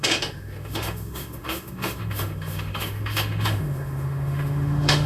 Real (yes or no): no